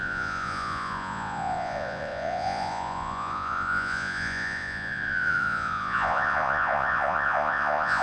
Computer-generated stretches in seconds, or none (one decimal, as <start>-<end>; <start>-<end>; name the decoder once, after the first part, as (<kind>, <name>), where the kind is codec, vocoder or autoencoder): 0.0-8.0 (vocoder, Vocos)